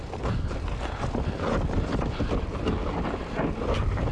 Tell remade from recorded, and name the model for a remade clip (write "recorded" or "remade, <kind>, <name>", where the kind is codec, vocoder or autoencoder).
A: recorded